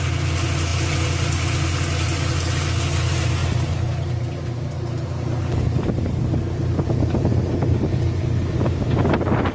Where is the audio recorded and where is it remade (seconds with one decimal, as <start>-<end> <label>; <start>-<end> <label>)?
0.0-9.5 recorded